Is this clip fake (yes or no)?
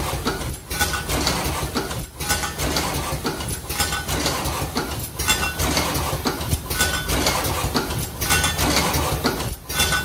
no